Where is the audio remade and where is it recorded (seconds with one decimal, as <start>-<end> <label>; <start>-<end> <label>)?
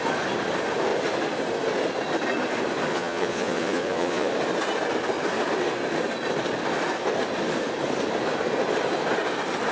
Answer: 0.0-2.9 recorded; 2.9-4.3 remade; 4.3-9.7 recorded